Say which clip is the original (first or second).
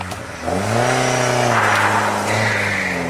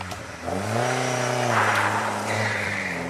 first